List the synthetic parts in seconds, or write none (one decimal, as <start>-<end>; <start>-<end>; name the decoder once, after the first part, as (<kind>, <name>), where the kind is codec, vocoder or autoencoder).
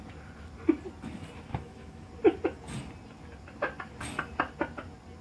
1.5-2.1 (autoencoder, DAC-VAE)